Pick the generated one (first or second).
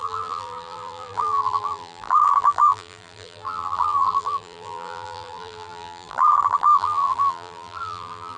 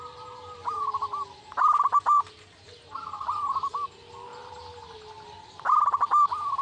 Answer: first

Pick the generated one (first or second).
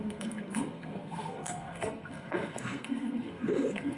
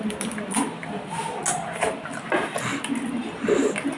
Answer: first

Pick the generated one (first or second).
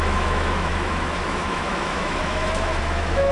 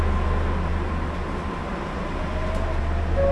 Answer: first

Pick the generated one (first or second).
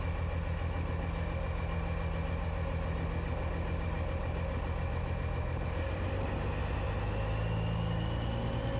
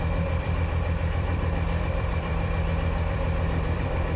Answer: second